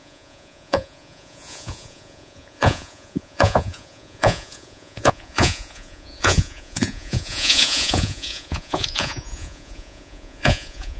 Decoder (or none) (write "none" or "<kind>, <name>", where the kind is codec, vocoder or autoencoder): vocoder, Vocos